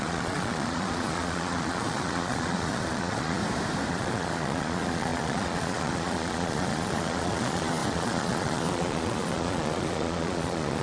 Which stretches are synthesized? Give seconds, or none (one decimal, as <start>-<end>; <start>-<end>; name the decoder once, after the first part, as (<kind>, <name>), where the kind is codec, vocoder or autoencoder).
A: 0.0-3.4 (vocoder, Vocos); 3.9-10.8